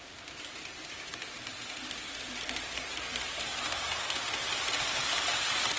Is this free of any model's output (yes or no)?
yes